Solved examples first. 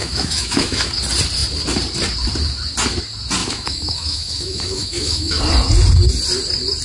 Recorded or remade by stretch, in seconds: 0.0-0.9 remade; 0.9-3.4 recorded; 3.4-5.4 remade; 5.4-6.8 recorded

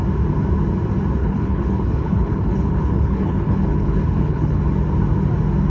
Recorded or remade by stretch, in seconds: 0.0-1.2 recorded; 1.2-4.6 remade; 4.6-5.7 recorded

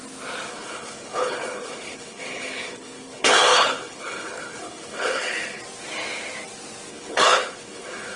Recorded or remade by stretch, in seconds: 0.0-0.5 recorded; 0.5-5.6 remade; 5.6-6.9 recorded; 6.9-8.2 remade

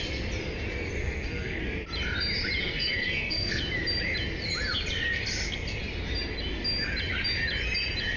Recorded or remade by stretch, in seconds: 0.0-1.0 recorded; 1.0-1.6 remade; 1.6-2.6 recorded; 2.6-3.6 remade; 3.6-8.2 recorded

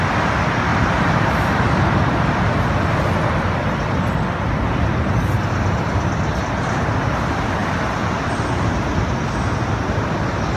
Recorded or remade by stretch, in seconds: 0.0-0.7 recorded; 0.7-2.5 remade; 2.5-10.6 recorded